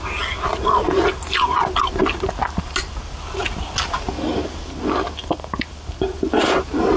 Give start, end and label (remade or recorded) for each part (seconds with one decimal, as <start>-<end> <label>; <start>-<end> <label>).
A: 0.0-7.0 recorded